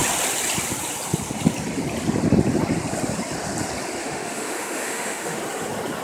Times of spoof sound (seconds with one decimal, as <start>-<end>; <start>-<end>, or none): 4.0-5.4